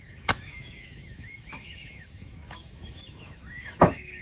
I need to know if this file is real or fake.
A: fake